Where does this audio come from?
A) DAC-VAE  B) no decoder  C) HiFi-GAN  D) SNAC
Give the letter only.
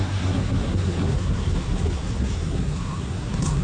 D